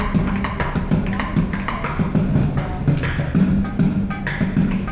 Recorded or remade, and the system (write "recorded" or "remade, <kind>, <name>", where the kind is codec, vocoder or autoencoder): recorded